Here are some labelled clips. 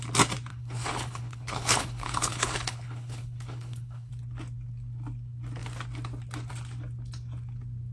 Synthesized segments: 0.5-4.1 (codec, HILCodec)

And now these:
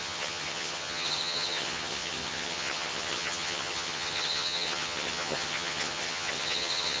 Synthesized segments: 0.0-7.0 (vocoder, HiFi-GAN)

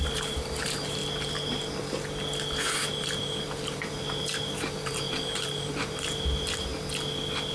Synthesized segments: 0.0-1.0 (vocoder, BigVGAN v2); 3.0-6.7

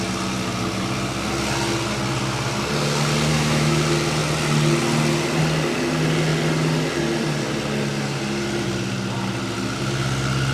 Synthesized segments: 3.3-3.8 (autoencoder, DAC-VAE)

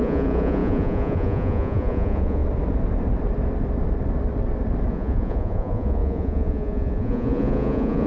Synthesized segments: 0.0-2.4 (vocoder, Vocos); 4.9-8.1